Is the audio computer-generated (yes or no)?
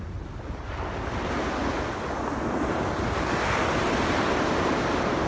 no